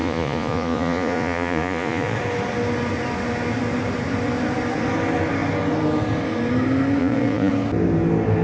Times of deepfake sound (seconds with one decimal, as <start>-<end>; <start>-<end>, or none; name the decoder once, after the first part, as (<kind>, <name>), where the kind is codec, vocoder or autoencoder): 0.0-2.2 (vocoder, Vocos); 7.0-7.5